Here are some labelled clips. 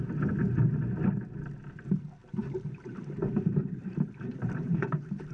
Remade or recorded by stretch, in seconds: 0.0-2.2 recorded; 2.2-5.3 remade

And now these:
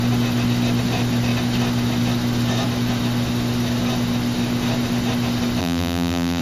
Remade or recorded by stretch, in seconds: 0.0-5.6 recorded; 5.6-6.4 remade

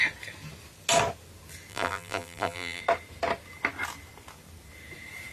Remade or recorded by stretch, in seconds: 0.0-1.7 recorded; 1.7-2.8 remade; 2.8-5.3 recorded